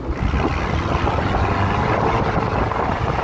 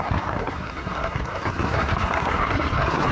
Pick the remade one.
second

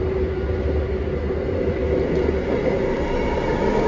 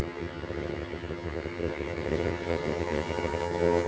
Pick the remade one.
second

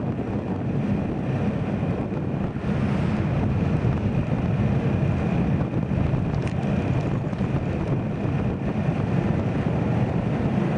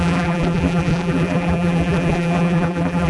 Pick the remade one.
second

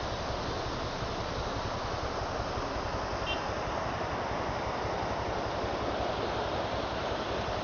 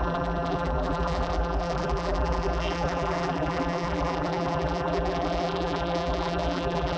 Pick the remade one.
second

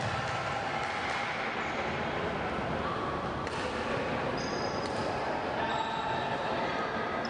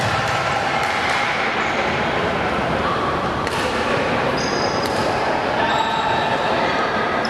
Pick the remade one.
second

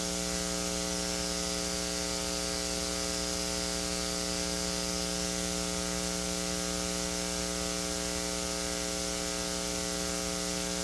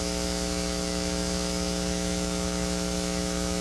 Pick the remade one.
second